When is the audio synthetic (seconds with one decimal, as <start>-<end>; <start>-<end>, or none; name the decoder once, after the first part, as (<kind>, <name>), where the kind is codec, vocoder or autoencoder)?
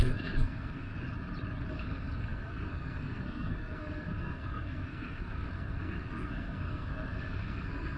0.0-0.9 (codec, SNAC); 1.7-8.0